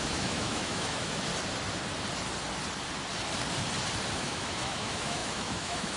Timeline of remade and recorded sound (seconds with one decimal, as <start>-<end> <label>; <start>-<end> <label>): 0.0-1.3 remade; 1.3-4.1 recorded; 4.1-6.0 remade